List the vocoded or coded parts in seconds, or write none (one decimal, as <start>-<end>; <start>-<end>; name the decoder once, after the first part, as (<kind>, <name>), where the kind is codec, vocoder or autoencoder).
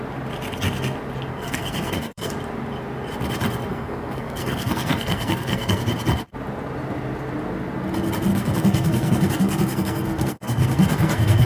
1.3-2.3 (codec, SNAC); 3.7-5.8; 8.3-11.5